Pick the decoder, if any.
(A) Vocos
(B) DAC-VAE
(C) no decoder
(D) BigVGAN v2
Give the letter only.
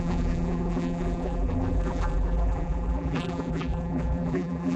D